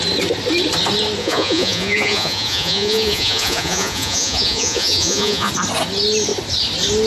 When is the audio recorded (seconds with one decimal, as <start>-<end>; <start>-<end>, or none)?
0.0-1.2; 5.5-7.1